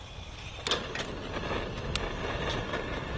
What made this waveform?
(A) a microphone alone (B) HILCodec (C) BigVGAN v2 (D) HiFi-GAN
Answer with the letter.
A